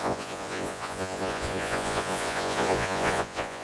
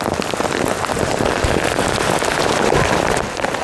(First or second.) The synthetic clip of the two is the first